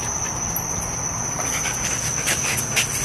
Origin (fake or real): real